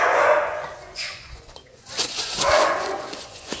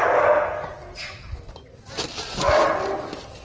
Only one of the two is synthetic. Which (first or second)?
first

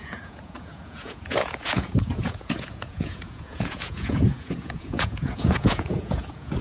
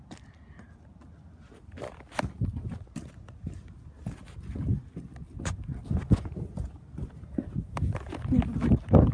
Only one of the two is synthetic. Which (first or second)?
first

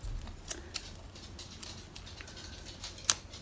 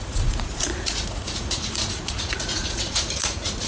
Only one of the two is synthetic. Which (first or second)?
second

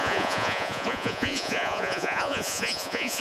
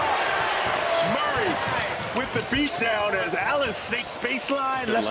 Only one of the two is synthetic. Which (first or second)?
first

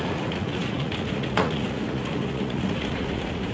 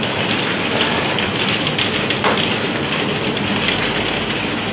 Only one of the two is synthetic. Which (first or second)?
first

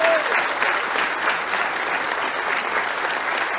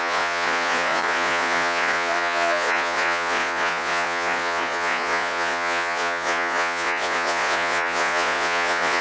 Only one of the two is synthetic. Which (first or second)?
second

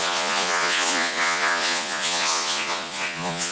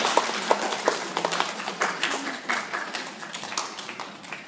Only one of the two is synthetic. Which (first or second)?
first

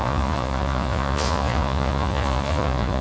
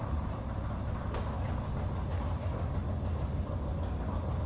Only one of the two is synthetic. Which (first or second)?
first